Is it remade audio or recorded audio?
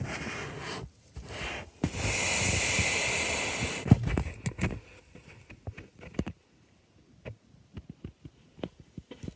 recorded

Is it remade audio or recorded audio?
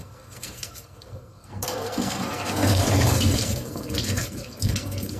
remade